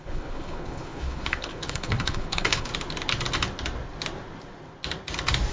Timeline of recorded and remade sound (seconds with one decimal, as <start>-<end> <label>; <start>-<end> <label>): 0.0-2.7 remade; 2.7-5.5 recorded